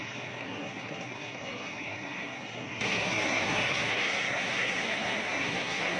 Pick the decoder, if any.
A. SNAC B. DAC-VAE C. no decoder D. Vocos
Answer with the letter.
A